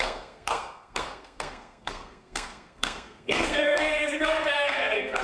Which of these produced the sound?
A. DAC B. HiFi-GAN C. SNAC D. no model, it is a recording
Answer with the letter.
C